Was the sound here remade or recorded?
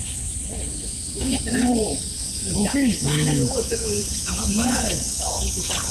remade